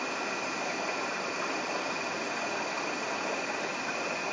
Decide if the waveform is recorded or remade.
recorded